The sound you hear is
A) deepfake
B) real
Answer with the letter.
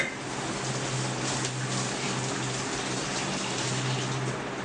B